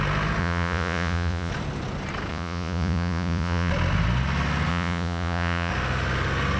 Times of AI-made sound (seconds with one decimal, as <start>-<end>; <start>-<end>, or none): 0.4-1.5; 2.3-3.7; 4.7-5.7